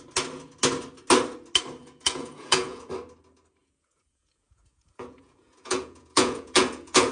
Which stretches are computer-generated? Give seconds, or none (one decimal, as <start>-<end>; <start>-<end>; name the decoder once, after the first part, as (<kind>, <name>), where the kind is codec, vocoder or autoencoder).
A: 1.8-2.9 (vocoder, Vocos); 3.6-7.1